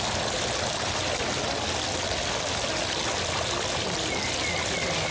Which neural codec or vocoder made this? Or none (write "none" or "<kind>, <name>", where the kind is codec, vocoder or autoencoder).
none